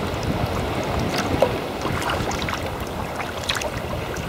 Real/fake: real